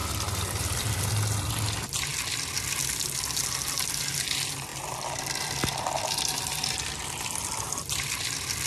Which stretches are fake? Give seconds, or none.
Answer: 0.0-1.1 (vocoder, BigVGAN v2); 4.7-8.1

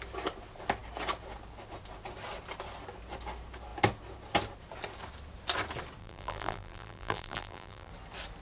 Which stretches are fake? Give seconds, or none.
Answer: 6.0-7.9 (vocoder, BigVGAN v2)

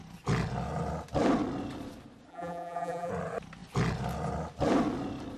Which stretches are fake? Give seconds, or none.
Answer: 2.3-3.1 (vocoder, BigVGAN v2)

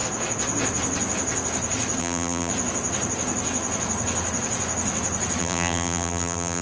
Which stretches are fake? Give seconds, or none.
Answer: 2.0-2.5 (vocoder, BigVGAN v2); 5.4-6.6

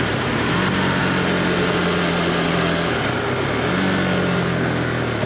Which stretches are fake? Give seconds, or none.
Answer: none

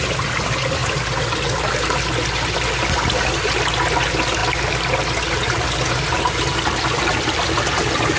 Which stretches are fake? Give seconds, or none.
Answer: none

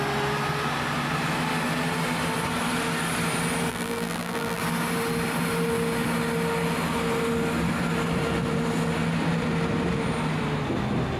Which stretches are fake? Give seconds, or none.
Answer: 3.7-4.6 (vocoder, BigVGAN v2)

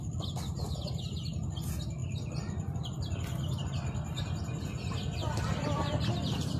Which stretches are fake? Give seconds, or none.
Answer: none